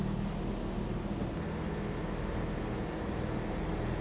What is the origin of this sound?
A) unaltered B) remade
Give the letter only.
A